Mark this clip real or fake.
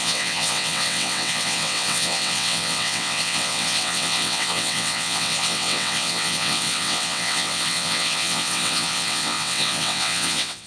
fake